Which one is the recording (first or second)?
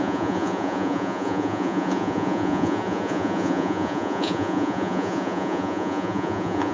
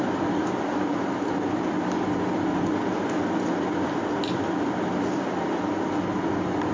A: second